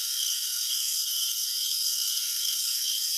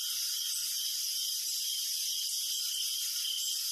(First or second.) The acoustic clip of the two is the second